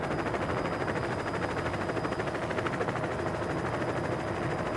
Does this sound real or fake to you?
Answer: real